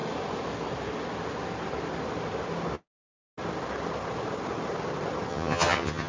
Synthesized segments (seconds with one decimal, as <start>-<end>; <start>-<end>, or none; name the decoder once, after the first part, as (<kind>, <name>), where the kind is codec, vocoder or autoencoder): 5.3-6.1 (vocoder, HiFi-GAN)